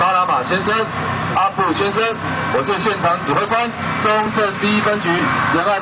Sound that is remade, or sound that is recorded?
recorded